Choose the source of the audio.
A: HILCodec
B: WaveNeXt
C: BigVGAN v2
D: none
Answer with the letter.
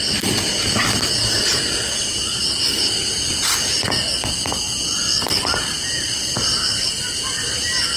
D